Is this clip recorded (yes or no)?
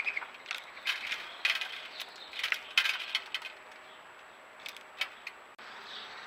yes